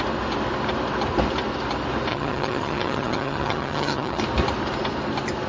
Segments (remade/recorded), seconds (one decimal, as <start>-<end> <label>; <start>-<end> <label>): 0.0-2.1 recorded; 2.1-4.2 remade; 4.2-5.5 recorded